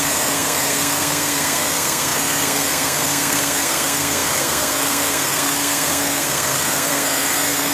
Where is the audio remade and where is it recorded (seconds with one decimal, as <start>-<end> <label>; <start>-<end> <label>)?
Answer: 0.0-7.7 remade

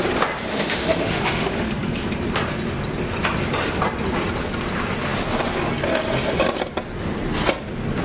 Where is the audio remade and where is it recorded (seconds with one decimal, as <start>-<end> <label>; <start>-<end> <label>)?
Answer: 0.0-0.5 recorded; 0.5-1.7 remade; 1.7-8.0 recorded

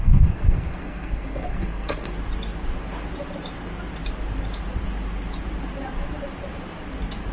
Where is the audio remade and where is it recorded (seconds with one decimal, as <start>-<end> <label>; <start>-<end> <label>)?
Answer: 0.0-2.1 remade; 2.1-7.3 recorded

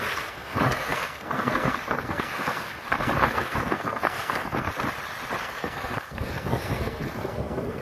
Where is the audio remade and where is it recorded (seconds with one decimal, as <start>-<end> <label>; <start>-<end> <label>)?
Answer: 0.0-4.7 remade; 4.7-5.4 recorded; 5.4-7.8 remade

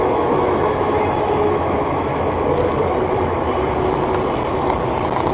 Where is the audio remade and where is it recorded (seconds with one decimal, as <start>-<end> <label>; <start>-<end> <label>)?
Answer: 0.0-2.1 remade; 2.1-5.3 recorded